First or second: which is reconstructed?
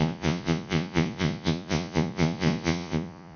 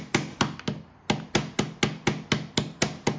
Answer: first